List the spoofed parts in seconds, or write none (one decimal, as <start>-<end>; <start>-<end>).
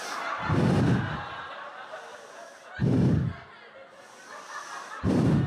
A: none